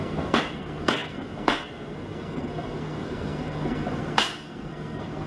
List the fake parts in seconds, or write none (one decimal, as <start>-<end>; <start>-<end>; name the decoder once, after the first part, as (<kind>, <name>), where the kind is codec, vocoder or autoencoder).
0.0-5.3 (codec, SNAC)